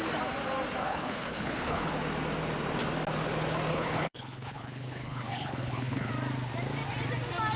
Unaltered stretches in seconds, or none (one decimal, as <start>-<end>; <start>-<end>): 0.0-0.8; 1.9-3.7; 6.1-7.6